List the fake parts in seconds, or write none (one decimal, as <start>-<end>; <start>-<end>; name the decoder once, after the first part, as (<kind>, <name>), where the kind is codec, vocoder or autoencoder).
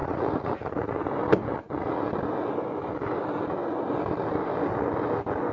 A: 0.0-1.1 (vocoder, Vocos); 1.5-2.0